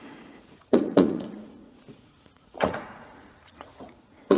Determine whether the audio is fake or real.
fake